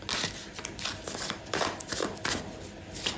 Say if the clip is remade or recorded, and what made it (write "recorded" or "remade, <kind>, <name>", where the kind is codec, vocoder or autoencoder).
recorded